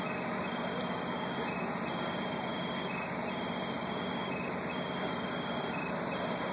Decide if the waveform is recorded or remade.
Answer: recorded